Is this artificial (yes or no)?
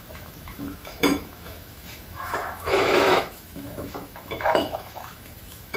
yes